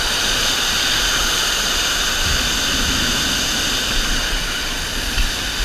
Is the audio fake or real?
real